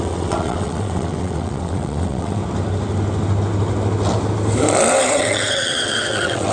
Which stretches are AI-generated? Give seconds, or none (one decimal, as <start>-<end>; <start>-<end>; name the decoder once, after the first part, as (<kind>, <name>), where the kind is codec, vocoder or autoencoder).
0.0-2.4 (vocoder, WaveNeXt); 5.1-6.5